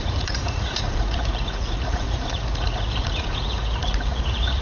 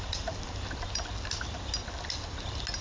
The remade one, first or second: first